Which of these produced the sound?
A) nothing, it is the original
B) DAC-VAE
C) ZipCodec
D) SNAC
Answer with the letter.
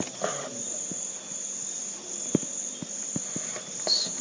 A